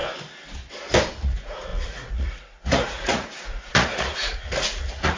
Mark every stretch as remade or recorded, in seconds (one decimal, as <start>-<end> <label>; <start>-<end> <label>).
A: 0.0-1.2 recorded; 1.2-5.2 remade